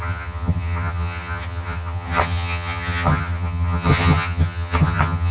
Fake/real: fake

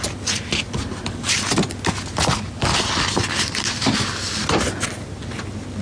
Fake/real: real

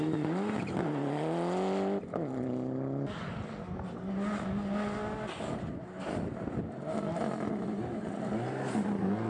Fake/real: real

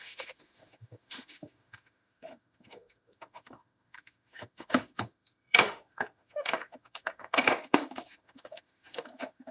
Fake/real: fake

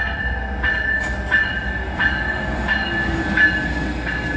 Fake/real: real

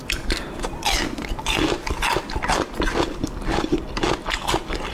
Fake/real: real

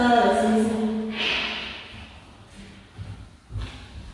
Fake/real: real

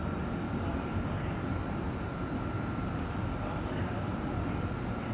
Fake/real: fake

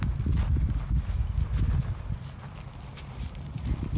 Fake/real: real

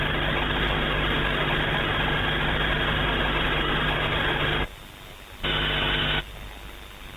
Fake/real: real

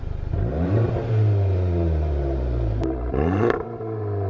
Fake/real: fake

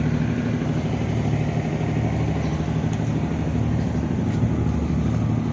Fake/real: real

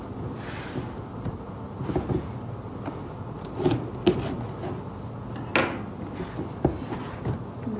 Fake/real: real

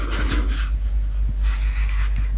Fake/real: real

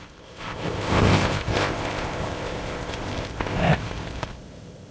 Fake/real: fake